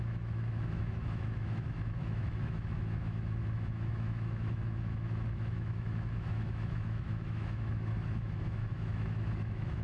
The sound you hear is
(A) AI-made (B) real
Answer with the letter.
A